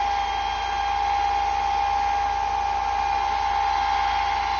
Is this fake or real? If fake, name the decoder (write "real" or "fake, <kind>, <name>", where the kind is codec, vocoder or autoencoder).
real